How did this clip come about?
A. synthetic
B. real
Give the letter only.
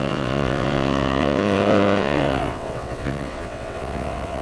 A